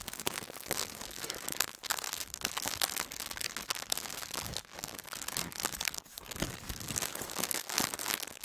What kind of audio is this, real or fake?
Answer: fake